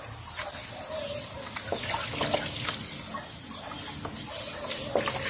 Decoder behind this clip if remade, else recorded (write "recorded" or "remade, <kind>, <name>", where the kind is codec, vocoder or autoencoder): recorded